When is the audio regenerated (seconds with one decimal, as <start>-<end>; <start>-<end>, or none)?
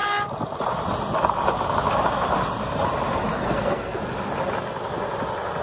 3.3-4.0